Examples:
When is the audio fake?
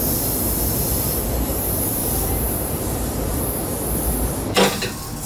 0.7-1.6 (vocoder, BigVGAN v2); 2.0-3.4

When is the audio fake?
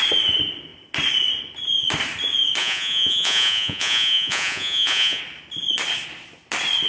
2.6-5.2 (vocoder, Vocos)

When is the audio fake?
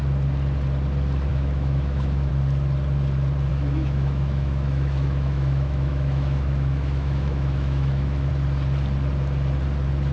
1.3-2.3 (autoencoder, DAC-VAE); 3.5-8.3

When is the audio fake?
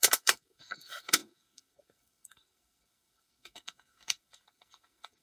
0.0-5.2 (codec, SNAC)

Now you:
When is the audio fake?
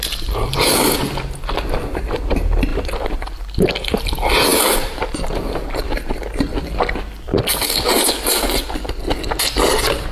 2.7-3.7 (vocoder, BigVGAN v2); 4.5-6.1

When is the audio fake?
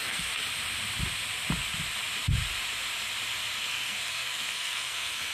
0.0-0.4 (codec, SNAC); 3.6-5.3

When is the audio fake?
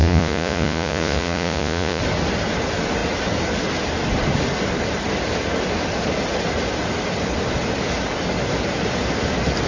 0.0-2.0 (vocoder, Vocos)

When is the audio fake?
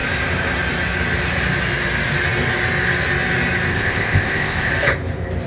3.7-4.7 (codec, ZipCodec)